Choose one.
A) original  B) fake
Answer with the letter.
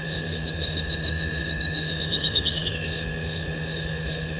B